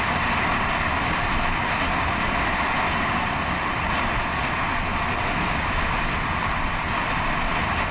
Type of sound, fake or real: real